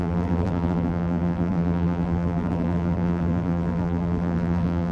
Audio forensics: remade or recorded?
remade